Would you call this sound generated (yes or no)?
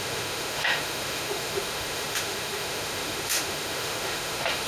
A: yes